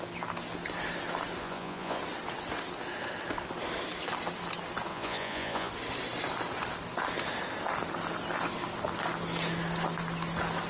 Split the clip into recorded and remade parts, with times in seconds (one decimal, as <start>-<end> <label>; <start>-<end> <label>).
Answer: 0.0-1.4 recorded; 1.4-2.0 remade; 2.0-4.9 recorded; 4.9-5.7 remade; 5.7-10.7 recorded